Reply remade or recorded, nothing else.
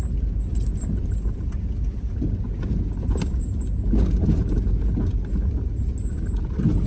recorded